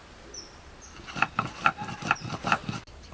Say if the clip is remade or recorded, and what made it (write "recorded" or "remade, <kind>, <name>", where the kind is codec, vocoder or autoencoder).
recorded